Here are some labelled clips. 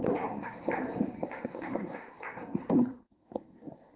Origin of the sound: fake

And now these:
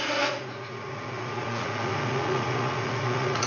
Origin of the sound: fake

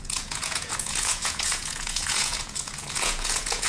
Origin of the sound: fake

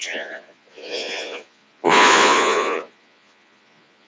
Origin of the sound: fake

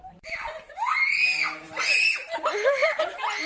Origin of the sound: fake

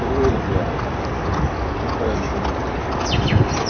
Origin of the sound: real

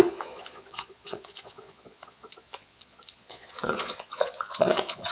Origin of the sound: fake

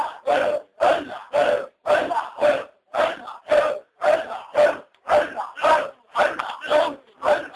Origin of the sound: real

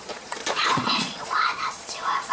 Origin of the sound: fake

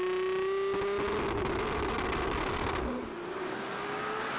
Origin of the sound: real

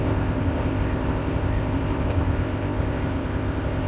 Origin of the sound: fake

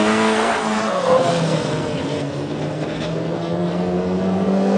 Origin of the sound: fake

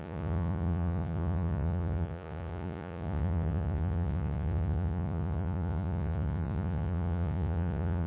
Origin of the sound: fake